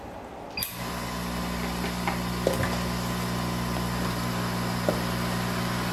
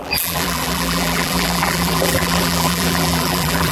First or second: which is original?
first